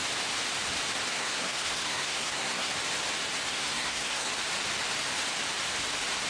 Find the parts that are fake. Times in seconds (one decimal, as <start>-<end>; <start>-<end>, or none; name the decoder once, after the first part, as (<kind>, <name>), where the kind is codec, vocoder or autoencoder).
1.1-2.7 (codec, SNAC); 3.5-4.3